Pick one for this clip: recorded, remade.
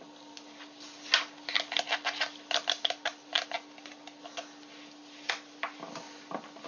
recorded